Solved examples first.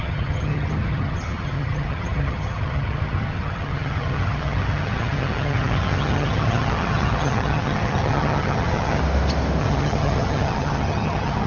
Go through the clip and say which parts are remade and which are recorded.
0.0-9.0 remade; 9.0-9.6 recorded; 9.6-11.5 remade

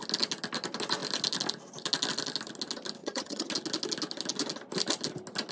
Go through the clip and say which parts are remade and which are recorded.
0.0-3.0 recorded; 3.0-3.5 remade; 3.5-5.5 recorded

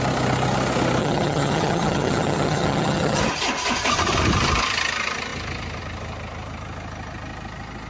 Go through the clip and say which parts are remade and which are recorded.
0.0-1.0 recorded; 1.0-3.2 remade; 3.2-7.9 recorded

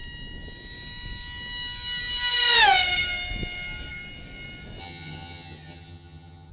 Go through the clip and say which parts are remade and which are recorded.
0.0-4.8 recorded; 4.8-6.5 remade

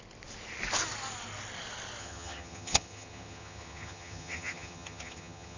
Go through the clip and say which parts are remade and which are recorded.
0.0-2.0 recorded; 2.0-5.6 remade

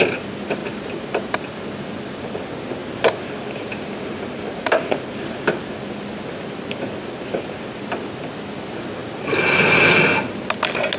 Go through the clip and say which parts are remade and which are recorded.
0.0-11.0 recorded

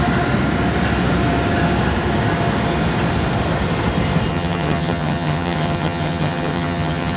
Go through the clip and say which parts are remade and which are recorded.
0.0-4.3 recorded; 4.3-7.2 remade

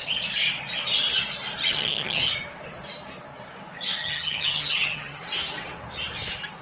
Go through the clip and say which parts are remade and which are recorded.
0.0-1.6 recorded; 1.6-2.2 remade; 2.2-4.0 recorded; 4.0-5.2 remade; 5.2-6.6 recorded